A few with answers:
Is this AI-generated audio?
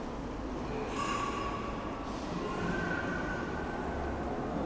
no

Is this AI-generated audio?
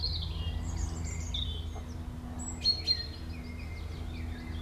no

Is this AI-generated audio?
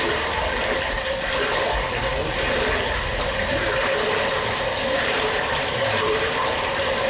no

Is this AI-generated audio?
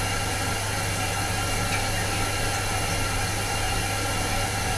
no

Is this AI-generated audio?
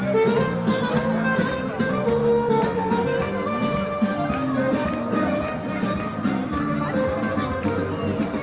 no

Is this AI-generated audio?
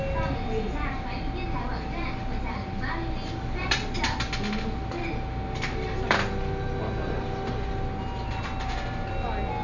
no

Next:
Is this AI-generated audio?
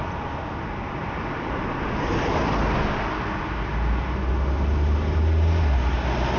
no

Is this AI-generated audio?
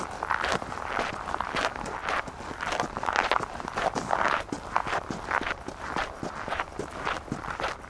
no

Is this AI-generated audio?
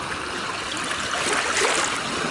no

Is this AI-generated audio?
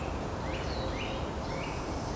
no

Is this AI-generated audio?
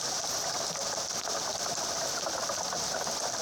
no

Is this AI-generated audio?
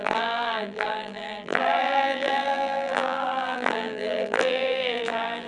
yes